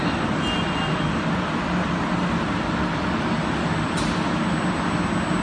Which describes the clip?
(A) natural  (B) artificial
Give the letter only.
A